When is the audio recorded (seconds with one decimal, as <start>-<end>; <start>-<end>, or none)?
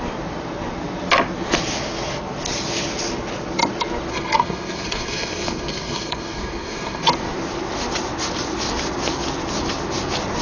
0.0-4.1; 7.1-10.4